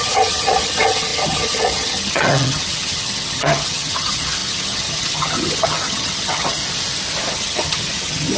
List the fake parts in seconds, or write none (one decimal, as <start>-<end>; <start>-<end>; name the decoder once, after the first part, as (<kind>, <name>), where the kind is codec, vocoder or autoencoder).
0.0-6.6 (vocoder, HiFi-GAN); 7.3-8.4

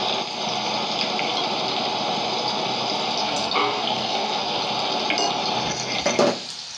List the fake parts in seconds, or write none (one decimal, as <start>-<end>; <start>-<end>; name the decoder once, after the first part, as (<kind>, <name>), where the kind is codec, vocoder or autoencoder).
3.2-4.6 (codec, SNAC)

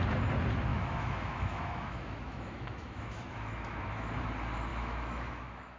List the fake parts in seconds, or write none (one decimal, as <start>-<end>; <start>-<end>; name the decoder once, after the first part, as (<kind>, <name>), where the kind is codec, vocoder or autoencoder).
0.7-4.2 (autoencoder, DAC-VAE); 4.7-5.8

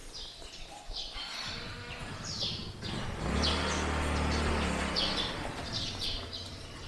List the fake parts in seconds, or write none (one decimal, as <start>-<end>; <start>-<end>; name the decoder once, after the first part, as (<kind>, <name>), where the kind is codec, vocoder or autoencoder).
0.0-2.6 (vocoder, BigVGAN v2); 5.2-6.9

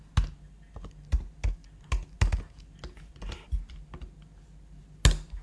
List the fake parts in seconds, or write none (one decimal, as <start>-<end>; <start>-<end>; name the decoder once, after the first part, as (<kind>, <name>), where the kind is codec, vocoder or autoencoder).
none

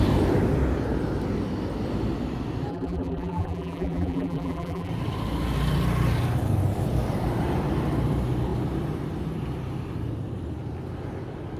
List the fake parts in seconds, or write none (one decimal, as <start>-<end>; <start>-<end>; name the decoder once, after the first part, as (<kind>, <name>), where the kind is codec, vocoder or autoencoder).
2.7-4.9 (vocoder, BigVGAN v2)

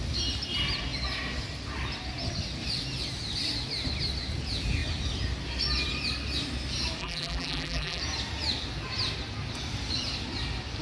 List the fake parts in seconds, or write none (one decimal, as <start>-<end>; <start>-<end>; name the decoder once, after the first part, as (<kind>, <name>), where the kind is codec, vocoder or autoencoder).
7.0-8.0 (vocoder, BigVGAN v2)

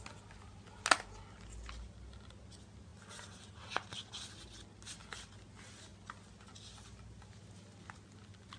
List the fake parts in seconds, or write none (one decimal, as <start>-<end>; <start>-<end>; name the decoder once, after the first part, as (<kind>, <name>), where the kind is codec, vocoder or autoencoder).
none